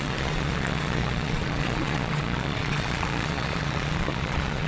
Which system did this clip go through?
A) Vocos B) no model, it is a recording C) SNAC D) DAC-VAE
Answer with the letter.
A